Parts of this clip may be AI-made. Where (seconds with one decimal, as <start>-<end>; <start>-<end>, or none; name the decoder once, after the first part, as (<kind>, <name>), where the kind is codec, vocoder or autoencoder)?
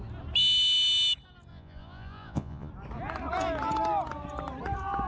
1.5-2.7 (vocoder, Vocos)